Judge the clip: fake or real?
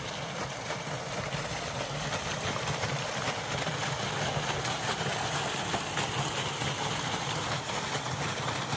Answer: real